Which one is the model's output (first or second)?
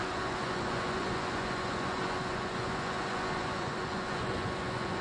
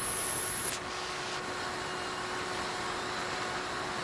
first